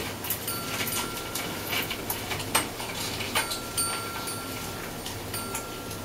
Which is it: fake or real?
real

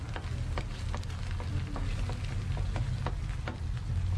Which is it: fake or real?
real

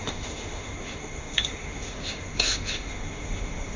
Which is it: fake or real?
fake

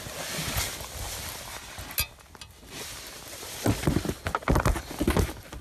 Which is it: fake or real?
real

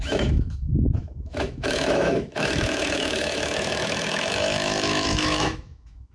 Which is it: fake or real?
fake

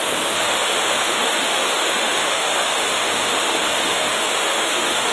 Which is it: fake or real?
fake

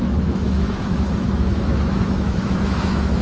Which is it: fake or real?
fake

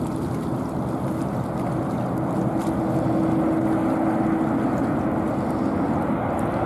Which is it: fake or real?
real